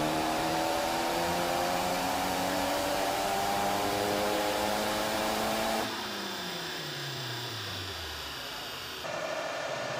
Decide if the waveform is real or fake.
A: fake